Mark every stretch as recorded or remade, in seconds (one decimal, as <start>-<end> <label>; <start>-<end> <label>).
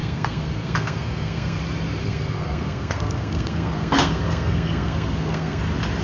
0.0-1.6 remade; 1.6-2.0 recorded; 2.0-5.6 remade; 5.6-6.0 recorded